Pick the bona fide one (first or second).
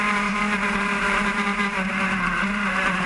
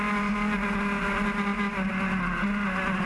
second